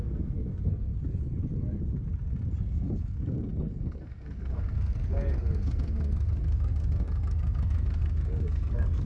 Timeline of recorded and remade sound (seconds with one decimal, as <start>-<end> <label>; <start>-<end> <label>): 0.0-0.9 remade; 0.9-2.6 recorded; 2.6-9.1 remade